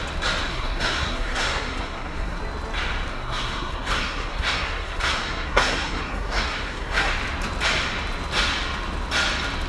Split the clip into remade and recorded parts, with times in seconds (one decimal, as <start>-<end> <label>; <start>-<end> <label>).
0.0-0.5 recorded; 0.5-2.4 remade; 2.4-3.1 recorded; 3.1-7.1 remade; 7.1-9.7 recorded